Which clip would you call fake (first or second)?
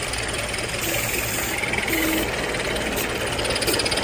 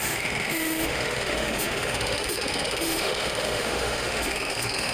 second